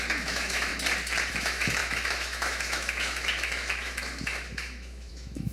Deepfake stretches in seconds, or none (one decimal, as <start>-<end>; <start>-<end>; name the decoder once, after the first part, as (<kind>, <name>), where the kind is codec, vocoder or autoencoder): 0.0-0.7 (autoencoder, DAC-VAE); 1.3-5.5